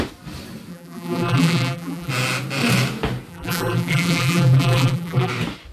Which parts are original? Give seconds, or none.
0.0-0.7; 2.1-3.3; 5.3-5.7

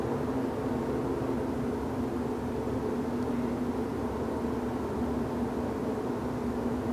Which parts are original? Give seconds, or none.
0.0-5.8

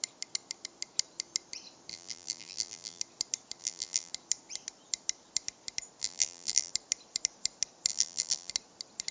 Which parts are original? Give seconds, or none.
0.0-1.9; 3.0-3.6; 4.1-6.0; 6.7-7.9; 8.5-9.1

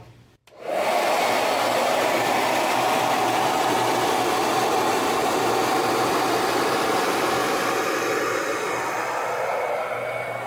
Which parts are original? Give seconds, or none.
7.4-8.9

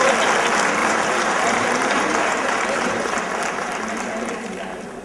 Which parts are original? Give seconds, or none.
0.0-0.8; 3.8-5.0

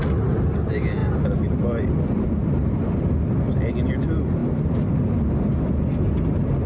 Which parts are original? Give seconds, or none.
0.0-1.0; 3.7-4.4; 5.3-6.7

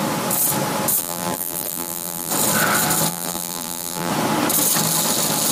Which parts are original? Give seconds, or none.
0.0-1.0; 2.3-3.1; 4.1-5.5

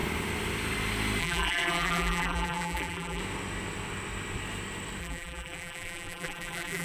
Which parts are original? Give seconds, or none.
0.0-1.2; 3.2-5.0